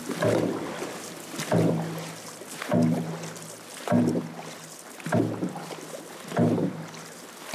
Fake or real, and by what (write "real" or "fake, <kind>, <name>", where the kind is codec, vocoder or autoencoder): real